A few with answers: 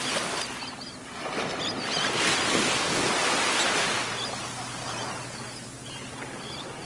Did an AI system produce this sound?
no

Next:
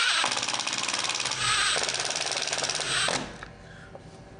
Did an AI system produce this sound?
no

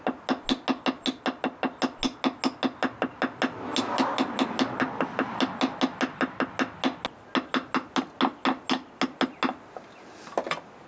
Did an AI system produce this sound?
no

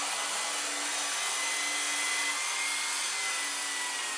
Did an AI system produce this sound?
no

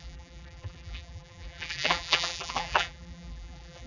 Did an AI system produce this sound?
yes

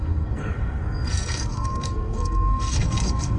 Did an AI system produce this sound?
yes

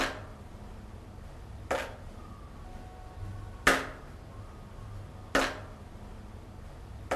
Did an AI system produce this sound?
no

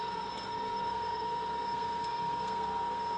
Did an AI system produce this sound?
yes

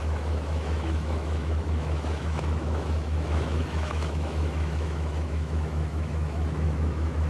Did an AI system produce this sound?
yes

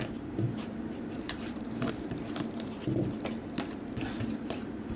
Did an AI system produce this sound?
yes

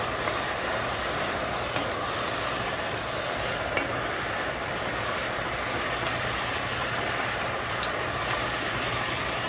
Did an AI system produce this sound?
no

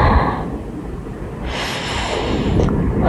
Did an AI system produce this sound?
no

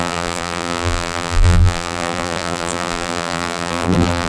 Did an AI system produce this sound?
yes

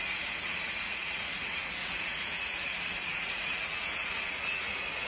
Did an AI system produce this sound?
yes